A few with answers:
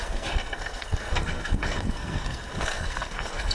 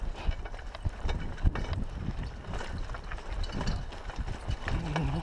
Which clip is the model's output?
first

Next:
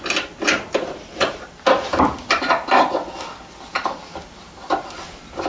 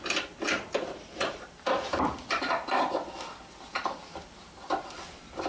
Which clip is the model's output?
second